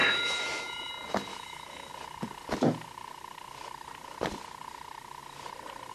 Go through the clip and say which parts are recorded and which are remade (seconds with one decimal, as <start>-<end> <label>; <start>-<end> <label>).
0.0-0.9 remade; 0.9-1.3 recorded; 1.3-1.9 remade; 1.9-5.9 recorded